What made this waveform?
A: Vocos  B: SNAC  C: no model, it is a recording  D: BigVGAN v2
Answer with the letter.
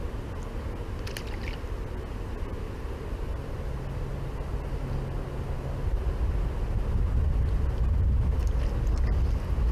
C